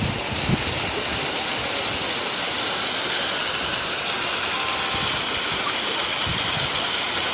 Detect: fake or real real